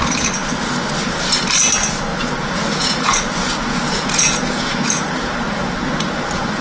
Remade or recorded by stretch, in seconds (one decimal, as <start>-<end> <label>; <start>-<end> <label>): 0.0-2.1 recorded; 2.1-5.3 remade; 5.3-6.6 recorded